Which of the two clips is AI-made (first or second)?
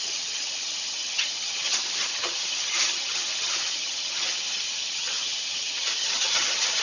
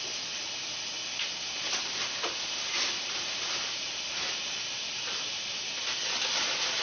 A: first